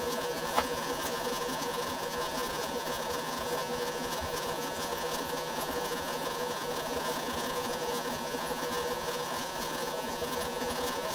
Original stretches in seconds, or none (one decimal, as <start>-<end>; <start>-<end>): none